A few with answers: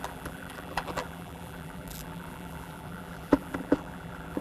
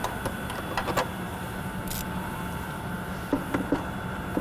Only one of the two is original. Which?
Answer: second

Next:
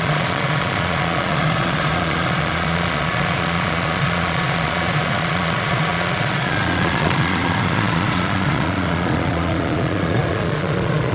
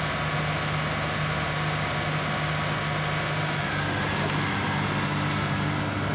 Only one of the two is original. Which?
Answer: second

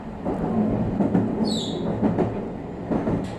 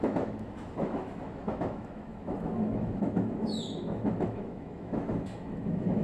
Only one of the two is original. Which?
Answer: first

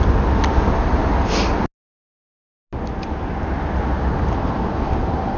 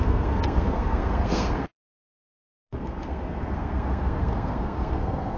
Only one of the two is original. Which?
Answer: first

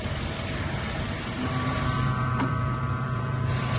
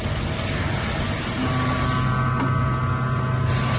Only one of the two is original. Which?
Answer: second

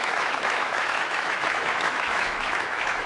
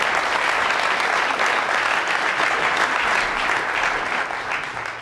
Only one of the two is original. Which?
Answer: second